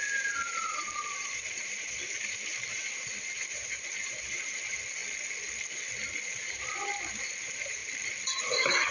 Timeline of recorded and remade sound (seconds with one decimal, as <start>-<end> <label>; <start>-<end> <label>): 0.0-5.0 remade; 5.0-6.2 recorded; 6.2-7.8 remade; 7.8-8.4 recorded; 8.4-8.9 remade